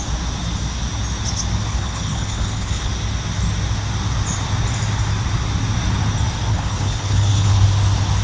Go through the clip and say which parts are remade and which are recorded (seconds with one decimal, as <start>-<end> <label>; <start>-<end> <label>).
0.0-1.7 recorded; 1.7-2.9 remade; 2.9-6.5 recorded; 6.5-7.6 remade; 7.6-8.2 recorded